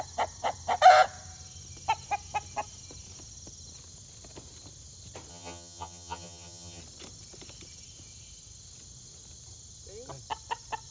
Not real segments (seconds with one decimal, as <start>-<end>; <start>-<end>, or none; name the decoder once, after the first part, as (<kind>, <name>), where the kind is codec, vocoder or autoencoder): 5.3-6.8 (vocoder, HiFi-GAN)